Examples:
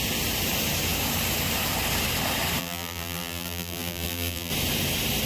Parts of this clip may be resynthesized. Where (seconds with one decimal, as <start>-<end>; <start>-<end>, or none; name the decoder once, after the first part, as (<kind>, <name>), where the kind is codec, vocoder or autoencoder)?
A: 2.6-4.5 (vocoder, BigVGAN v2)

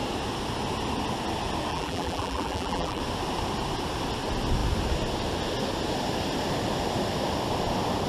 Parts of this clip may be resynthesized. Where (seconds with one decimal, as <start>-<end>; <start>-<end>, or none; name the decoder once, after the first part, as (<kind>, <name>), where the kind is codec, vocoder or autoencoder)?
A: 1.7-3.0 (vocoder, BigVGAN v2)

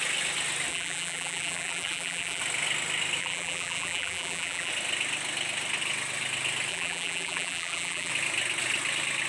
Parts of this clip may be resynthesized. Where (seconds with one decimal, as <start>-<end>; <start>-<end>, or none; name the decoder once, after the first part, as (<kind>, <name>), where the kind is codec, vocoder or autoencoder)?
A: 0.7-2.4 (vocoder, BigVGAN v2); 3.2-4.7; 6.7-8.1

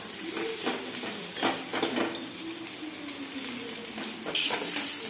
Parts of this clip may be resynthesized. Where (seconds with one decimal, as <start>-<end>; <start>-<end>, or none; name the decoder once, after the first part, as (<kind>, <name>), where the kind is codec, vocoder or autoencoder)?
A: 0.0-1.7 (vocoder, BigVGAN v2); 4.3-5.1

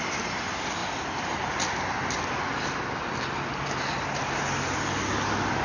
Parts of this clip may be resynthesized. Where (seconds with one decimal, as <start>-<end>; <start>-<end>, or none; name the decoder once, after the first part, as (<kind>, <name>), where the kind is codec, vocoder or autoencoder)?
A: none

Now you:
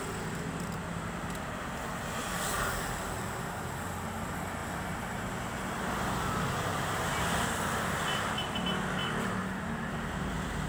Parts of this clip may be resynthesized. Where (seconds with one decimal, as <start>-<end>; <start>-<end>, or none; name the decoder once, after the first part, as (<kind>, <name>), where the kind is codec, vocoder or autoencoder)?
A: 2.2-3.9 (vocoder, BigVGAN v2); 9.0-10.7

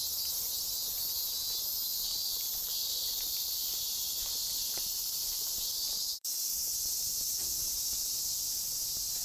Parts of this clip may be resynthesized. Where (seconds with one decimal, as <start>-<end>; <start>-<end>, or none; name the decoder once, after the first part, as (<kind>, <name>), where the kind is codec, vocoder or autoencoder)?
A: 1.9-6.5 (vocoder, BigVGAN v2)

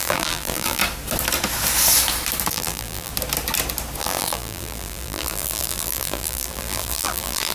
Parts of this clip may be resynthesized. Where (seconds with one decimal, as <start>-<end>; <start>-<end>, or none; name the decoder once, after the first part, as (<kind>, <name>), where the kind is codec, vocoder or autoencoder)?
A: 0.0-0.8 (vocoder, BigVGAN v2); 2.5-3.1; 4.0-7.5